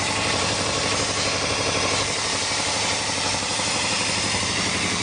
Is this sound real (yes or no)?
no